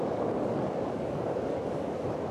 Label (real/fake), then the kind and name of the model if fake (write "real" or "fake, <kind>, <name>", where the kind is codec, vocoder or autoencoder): fake, codec, DAC